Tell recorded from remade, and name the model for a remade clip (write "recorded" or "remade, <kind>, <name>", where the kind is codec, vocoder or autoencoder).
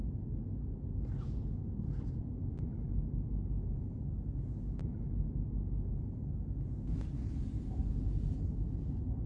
recorded